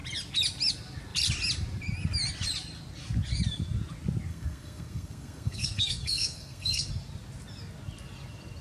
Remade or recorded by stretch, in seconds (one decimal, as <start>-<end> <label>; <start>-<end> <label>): 0.0-4.3 recorded; 4.3-6.9 remade; 6.9-8.6 recorded